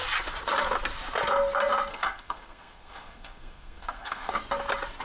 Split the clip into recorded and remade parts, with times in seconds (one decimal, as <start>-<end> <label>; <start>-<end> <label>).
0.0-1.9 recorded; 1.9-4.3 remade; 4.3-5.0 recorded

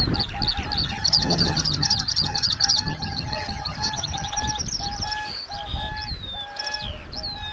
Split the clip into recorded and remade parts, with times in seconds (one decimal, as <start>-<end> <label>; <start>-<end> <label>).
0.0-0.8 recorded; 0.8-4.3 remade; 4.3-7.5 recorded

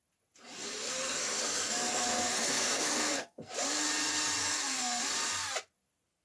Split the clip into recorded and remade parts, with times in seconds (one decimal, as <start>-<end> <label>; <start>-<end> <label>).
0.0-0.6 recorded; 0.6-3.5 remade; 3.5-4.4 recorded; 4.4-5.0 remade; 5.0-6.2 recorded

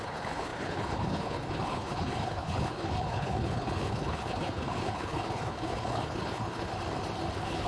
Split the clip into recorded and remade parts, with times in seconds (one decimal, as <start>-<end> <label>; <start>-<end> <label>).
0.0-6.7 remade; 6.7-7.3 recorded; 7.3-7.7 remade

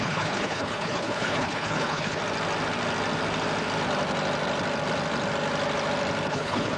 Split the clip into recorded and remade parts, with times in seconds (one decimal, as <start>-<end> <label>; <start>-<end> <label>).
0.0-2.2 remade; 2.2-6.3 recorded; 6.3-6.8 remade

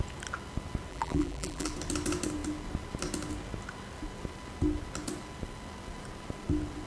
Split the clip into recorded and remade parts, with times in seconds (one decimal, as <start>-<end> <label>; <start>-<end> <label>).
0.0-0.9 recorded; 0.9-1.7 remade; 1.7-6.9 recorded

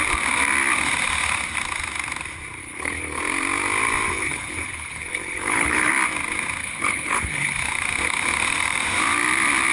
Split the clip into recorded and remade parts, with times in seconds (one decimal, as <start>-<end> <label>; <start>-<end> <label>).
0.0-2.6 recorded; 2.6-3.2 remade; 3.2-4.1 recorded; 4.1-5.9 remade; 5.9-6.6 recorded; 6.6-7.7 remade; 7.7-9.7 recorded

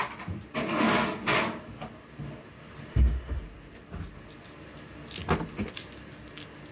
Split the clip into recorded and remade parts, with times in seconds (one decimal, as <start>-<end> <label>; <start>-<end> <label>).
0.0-2.9 recorded; 2.9-3.4 remade; 3.4-6.7 recorded